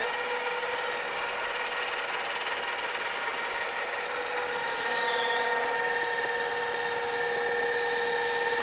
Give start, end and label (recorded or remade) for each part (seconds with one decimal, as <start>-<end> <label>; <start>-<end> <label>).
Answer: 0.0-8.6 recorded